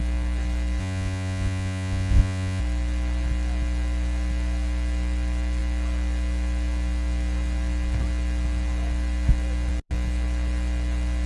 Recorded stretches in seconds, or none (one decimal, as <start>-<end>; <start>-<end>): 0.0-0.8; 2.6-11.3